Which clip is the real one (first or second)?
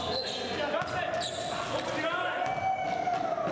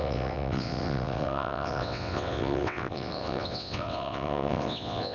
first